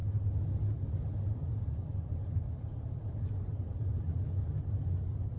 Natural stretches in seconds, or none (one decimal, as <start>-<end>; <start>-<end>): 0.0-5.4